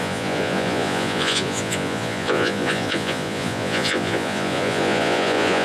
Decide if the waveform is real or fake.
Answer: fake